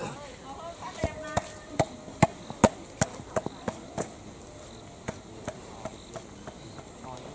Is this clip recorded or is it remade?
recorded